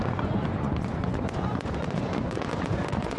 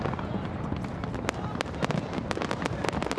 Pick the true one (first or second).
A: second